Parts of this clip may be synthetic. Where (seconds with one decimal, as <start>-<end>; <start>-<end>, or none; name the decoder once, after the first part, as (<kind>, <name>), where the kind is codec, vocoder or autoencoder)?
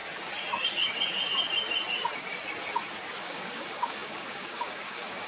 3.2-5.3 (codec, DAC)